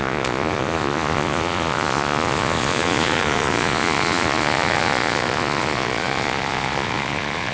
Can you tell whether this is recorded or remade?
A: remade